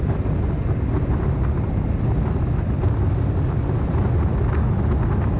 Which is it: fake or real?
real